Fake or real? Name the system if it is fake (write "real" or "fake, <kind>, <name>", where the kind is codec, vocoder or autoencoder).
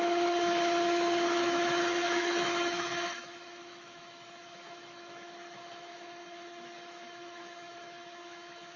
fake, autoencoder, DAC-VAE